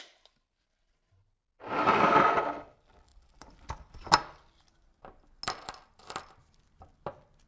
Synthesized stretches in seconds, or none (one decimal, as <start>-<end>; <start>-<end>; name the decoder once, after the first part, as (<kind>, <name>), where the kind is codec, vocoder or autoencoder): none